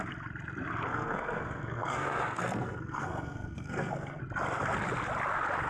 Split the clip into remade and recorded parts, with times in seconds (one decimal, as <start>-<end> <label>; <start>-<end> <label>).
0.0-0.9 recorded; 0.9-4.2 remade; 4.2-5.7 recorded